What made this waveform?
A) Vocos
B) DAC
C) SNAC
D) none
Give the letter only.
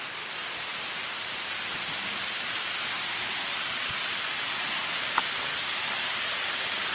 D